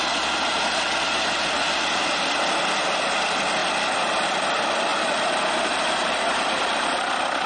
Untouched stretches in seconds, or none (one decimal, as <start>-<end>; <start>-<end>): 0.0-7.5